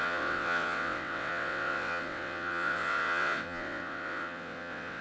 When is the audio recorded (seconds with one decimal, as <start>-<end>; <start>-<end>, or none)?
none